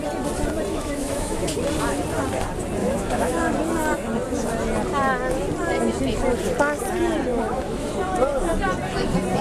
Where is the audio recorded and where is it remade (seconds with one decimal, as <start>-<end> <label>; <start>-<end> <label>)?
0.0-0.7 recorded; 0.7-1.5 remade; 1.5-2.8 recorded; 2.8-3.5 remade; 3.5-7.3 recorded; 7.3-7.9 remade; 7.9-9.4 recorded